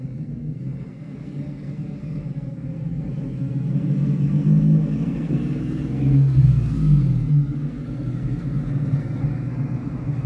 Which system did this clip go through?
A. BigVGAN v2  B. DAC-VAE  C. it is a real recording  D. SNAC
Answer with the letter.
D